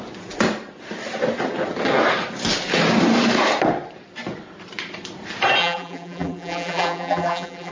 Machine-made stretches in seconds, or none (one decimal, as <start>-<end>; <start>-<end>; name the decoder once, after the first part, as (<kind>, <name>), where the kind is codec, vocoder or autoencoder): 5.6-7.7 (vocoder, BigVGAN v2)